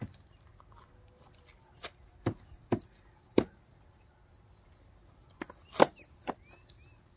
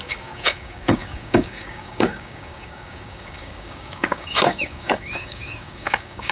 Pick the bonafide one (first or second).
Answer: first